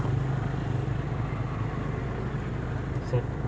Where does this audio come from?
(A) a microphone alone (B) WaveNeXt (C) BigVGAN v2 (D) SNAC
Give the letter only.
A